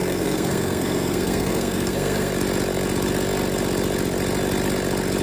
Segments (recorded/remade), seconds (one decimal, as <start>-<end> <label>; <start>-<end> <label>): 0.0-2.3 remade; 2.3-5.2 recorded